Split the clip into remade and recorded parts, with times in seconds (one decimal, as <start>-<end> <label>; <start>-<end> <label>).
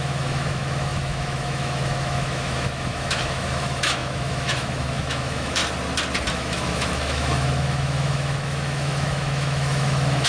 0.0-5.6 remade; 5.6-6.3 recorded; 6.3-10.3 remade